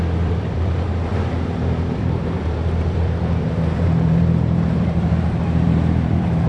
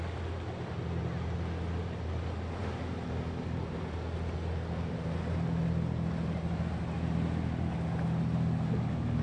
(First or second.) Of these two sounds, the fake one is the first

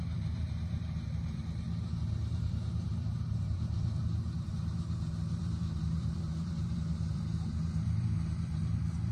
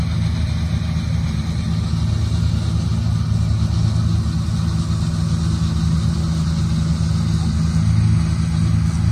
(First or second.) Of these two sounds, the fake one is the first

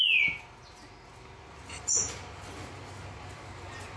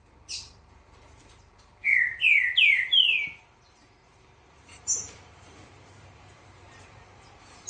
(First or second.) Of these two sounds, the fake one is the second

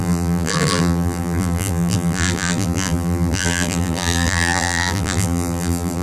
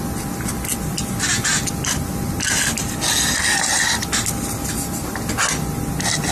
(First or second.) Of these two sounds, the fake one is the first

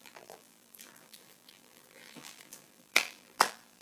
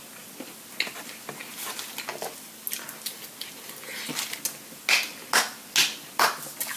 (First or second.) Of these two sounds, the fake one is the first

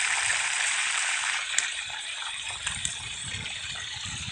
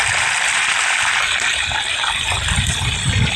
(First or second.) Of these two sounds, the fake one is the first